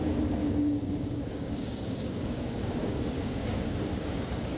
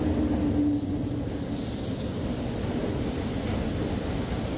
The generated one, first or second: first